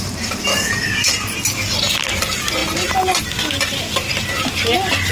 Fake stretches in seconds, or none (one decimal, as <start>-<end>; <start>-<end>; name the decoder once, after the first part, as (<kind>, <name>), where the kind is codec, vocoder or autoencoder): 0.5-1.1 (codec, DAC)